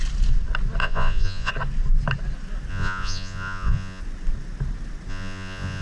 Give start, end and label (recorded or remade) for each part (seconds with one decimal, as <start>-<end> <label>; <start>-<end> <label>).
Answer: 0.0-0.8 recorded; 0.8-1.5 remade; 1.5-2.7 recorded; 2.7-4.0 remade; 4.0-5.1 recorded; 5.1-5.8 remade